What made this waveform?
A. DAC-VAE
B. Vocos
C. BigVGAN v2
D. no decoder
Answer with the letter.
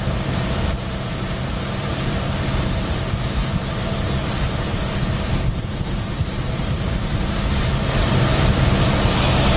C